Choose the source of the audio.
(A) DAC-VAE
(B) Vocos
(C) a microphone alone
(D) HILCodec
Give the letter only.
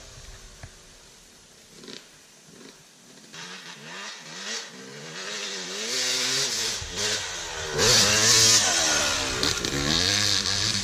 C